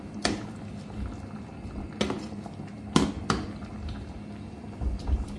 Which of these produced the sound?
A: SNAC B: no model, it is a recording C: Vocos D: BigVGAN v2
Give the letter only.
B